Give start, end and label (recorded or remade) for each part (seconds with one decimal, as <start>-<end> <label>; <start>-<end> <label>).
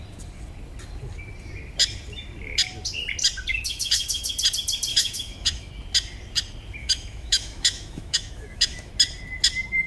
0.0-3.5 recorded; 3.5-4.3 remade; 4.3-4.9 recorded; 4.9-5.7 remade; 5.7-6.8 recorded; 6.8-8.9 remade; 8.9-9.9 recorded